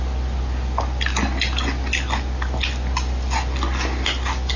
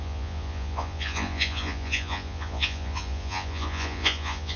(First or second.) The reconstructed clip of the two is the second